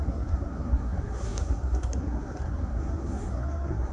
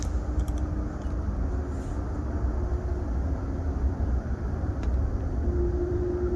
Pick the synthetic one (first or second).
first